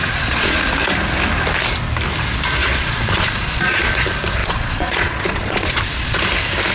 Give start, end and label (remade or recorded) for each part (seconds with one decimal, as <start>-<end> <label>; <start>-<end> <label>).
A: 0.0-0.6 remade; 0.6-2.6 recorded; 2.6-3.9 remade; 3.9-4.4 recorded; 4.4-6.2 remade; 6.2-6.7 recorded